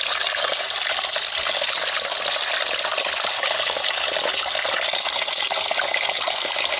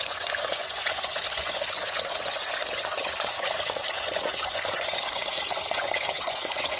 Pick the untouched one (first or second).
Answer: first